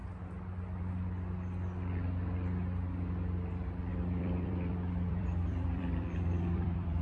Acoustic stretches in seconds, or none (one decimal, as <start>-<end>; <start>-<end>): 0.0-3.9